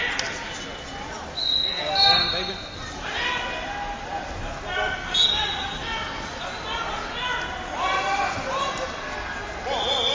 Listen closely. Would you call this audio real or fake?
real